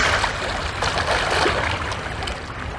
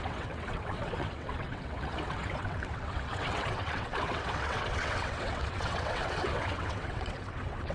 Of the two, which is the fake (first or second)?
second